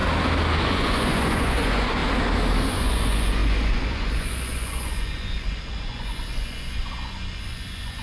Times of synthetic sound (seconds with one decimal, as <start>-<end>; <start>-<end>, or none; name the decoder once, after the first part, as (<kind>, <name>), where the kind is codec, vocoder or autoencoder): 0.6-2.0 (vocoder, Vocos); 2.7-8.0